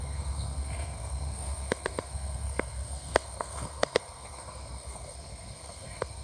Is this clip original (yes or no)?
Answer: no